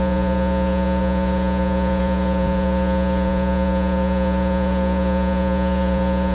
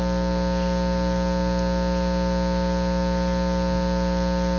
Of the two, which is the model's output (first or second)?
first